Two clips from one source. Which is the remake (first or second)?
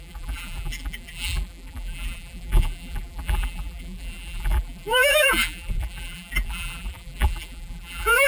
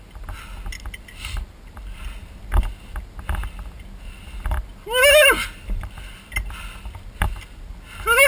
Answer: first